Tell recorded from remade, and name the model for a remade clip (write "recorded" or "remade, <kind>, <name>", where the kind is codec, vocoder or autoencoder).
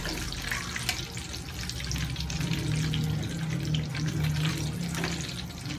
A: recorded